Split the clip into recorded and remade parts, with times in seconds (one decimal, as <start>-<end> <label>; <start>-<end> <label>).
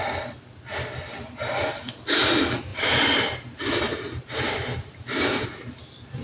0.0-2.7 recorded; 2.7-5.6 remade; 5.6-6.2 recorded